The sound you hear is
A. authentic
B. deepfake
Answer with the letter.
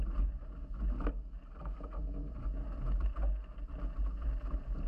A